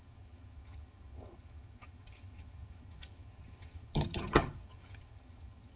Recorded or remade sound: remade